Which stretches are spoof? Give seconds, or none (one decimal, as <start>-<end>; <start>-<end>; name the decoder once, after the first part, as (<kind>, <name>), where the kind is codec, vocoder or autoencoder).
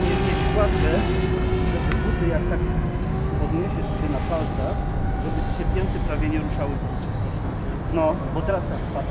none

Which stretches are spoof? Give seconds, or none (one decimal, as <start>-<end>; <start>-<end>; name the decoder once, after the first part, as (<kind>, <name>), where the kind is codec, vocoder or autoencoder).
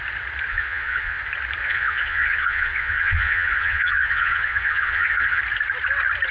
0.5-1.2 (vocoder, Vocos); 1.6-5.4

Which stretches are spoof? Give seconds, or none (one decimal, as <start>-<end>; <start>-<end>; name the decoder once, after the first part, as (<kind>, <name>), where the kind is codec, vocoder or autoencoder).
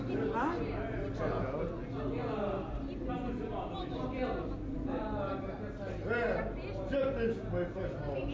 none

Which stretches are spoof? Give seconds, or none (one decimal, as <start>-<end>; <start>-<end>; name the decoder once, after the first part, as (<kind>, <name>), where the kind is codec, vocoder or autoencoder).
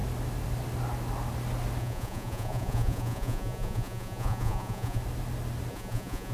1.8-5.0 (vocoder, Vocos); 5.7-6.3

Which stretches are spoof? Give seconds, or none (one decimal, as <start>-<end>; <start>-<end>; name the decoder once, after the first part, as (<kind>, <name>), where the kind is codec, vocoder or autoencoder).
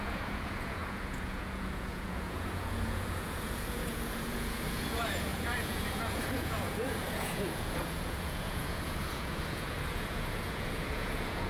0.0-11.5 (vocoder, Vocos)